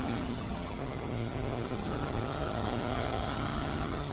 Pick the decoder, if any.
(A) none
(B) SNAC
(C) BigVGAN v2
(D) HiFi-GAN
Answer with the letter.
D